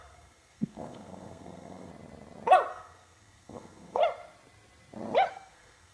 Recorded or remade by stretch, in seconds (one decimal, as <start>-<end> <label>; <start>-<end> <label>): 0.0-1.9 remade; 1.9-2.7 recorded; 2.7-4.0 remade; 4.0-5.3 recorded; 5.3-5.9 remade